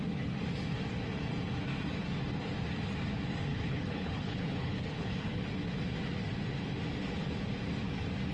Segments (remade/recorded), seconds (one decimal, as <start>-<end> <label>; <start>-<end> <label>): 0.0-3.5 recorded; 3.5-5.4 remade; 5.4-8.3 recorded